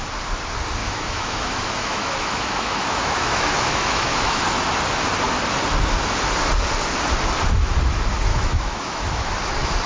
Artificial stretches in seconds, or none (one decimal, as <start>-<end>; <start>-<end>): 0.8-4.4; 8.3-9.3